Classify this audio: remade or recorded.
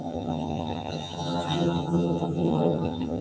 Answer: remade